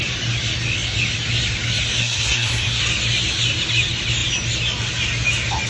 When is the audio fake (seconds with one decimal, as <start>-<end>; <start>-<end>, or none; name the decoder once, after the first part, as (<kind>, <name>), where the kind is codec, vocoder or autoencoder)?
2.0-2.8 (codec, SNAC)